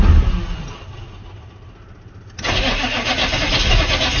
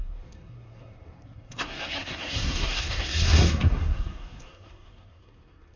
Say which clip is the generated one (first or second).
second